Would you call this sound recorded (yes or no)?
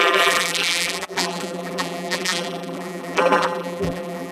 no